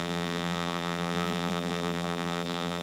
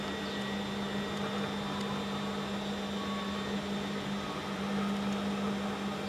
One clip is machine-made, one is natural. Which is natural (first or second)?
second